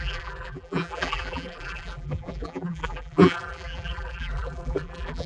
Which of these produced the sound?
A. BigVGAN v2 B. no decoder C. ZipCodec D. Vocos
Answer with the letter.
A